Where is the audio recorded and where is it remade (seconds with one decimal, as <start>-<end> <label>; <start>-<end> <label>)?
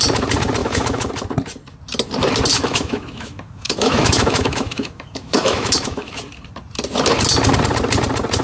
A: 0.0-0.6 recorded; 0.6-1.1 remade; 1.1-2.5 recorded; 2.5-6.2 remade; 6.2-8.4 recorded